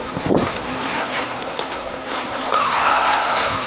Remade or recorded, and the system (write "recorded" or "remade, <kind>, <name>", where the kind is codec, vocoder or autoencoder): remade, codec, SNAC